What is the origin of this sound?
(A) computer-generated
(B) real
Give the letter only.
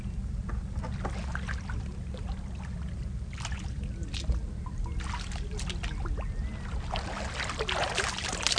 B